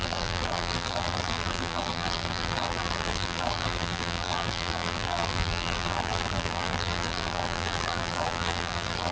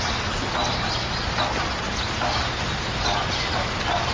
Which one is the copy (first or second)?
first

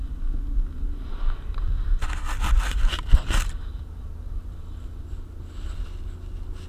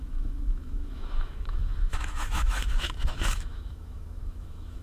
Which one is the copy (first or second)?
second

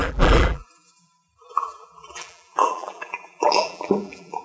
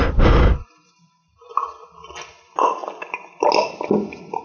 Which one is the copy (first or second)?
first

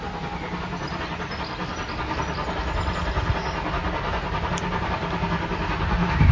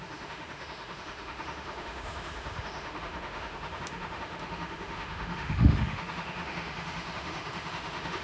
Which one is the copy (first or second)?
second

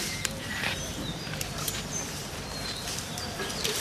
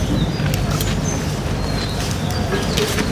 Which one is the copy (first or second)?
first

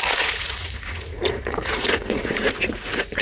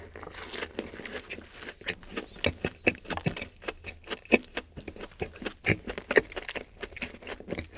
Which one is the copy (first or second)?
first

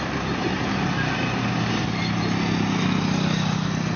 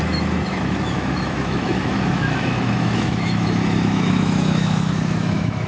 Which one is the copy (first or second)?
second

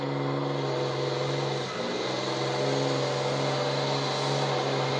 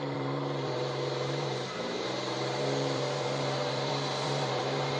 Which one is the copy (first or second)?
second